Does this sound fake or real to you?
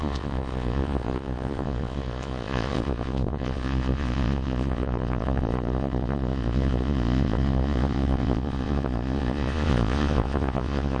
fake